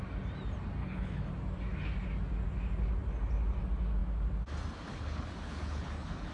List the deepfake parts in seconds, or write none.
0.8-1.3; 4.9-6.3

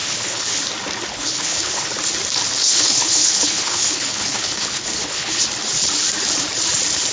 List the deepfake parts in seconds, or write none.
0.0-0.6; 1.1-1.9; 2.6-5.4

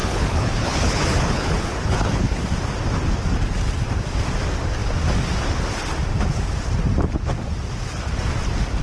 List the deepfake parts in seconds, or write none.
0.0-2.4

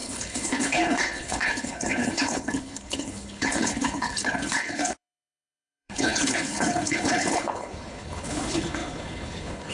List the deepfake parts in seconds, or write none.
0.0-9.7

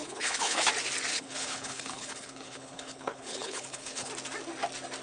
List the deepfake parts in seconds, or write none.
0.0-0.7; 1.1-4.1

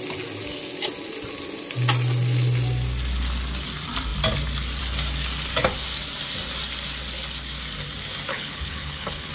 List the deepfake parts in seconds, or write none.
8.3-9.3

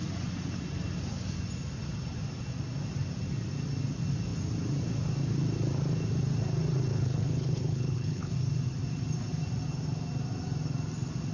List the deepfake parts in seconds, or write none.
6.9-8.3

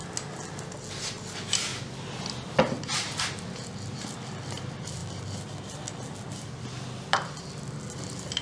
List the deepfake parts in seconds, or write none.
none